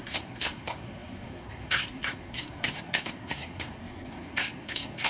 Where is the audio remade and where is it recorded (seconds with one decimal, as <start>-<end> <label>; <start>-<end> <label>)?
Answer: 0.0-5.1 remade